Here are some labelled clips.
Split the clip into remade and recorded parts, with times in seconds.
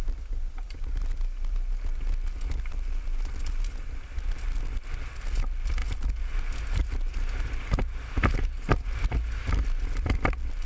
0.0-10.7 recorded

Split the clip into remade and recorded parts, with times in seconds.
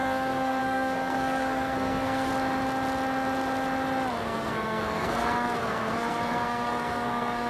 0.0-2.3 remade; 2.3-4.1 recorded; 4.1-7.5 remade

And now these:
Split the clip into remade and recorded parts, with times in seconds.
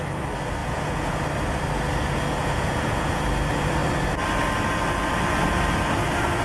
0.0-0.6 recorded; 0.6-1.2 remade; 1.2-2.4 recorded; 2.4-3.3 remade; 3.3-6.4 recorded